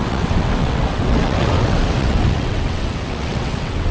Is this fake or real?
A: fake